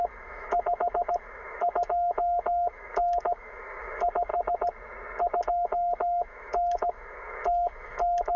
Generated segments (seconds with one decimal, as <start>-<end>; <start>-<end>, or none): 0.0-4.3; 5.5-8.4